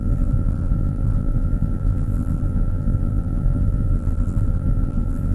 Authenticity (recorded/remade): remade